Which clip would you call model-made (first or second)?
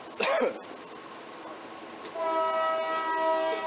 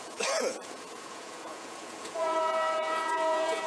second